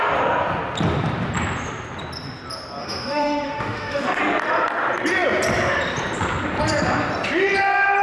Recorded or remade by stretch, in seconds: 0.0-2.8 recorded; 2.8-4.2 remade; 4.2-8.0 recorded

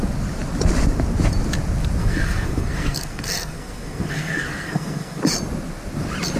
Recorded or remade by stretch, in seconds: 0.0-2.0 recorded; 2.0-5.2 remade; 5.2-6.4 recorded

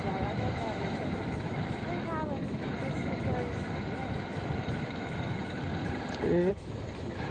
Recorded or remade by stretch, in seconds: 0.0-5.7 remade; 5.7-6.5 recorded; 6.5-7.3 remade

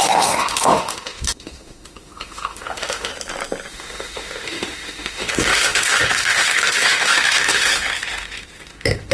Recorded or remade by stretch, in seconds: 0.0-3.1 remade; 3.1-3.7 recorded; 3.7-9.1 remade

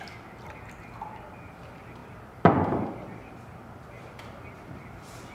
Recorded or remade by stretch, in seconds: 0.0-5.3 remade

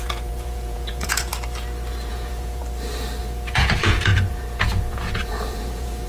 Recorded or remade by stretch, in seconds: 0.0-1.3 remade; 1.3-2.1 recorded; 2.1-2.6 remade; 2.6-3.2 recorded; 3.2-6.1 remade